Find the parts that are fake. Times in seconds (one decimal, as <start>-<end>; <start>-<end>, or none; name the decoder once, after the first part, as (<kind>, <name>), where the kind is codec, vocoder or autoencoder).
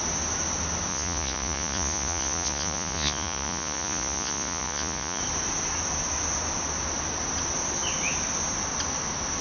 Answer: 0.9-5.2 (vocoder, Vocos)